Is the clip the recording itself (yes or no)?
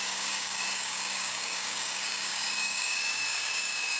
no